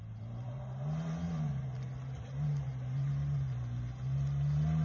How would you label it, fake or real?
real